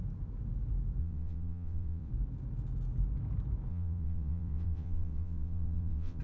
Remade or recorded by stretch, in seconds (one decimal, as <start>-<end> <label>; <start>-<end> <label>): 0.0-1.0 recorded; 1.0-2.1 remade; 2.1-3.7 recorded; 3.7-6.2 remade